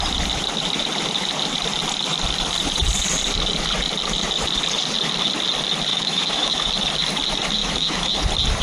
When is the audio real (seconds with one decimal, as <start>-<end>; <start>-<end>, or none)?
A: 0.0-5.9; 6.7-7.6; 8.1-8.6